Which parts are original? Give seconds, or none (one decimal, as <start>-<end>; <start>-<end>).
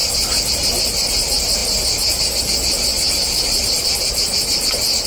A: 0.0-5.1